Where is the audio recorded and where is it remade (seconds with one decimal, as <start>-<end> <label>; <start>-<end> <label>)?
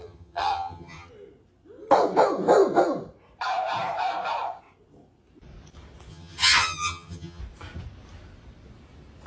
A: 0.0-1.1 remade; 1.1-6.1 recorded; 6.1-7.4 remade; 7.4-9.3 recorded